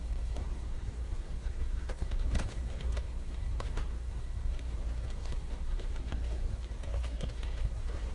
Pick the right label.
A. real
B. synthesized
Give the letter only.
B